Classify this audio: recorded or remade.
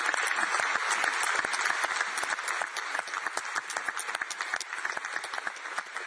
recorded